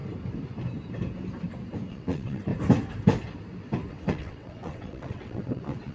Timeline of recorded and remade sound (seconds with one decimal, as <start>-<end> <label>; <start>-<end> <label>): 0.0-1.9 recorded; 1.9-2.5 remade; 2.5-3.9 recorded; 3.9-5.9 remade